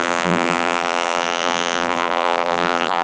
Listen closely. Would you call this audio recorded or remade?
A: remade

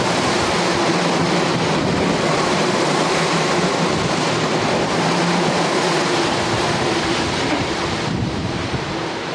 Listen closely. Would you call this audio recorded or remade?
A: remade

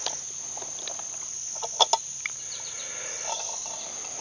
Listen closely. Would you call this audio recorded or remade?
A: recorded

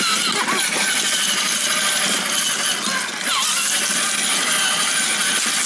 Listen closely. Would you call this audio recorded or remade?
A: recorded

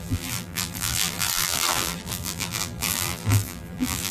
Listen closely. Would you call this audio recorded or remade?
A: remade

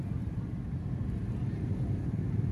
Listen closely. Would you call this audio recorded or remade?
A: recorded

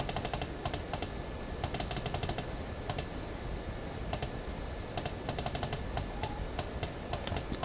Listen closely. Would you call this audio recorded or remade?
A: recorded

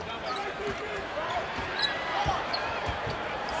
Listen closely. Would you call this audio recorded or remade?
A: remade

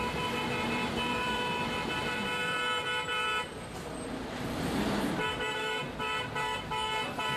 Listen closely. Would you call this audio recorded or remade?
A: remade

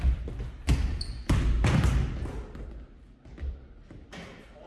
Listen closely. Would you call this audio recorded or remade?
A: recorded